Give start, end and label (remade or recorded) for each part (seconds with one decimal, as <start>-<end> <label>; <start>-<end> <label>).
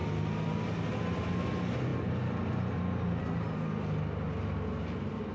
0.0-5.3 recorded